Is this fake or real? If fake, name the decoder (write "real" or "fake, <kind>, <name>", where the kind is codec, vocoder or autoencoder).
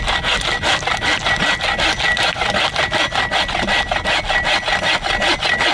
real